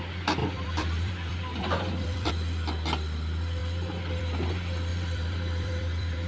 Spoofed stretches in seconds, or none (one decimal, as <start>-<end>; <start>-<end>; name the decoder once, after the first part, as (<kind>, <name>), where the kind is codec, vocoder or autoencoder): 0.4-2.3 (vocoder, BigVGAN v2); 3.6-4.2; 4.9-6.3